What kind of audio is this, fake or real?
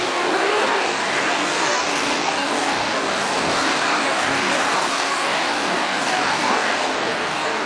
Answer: fake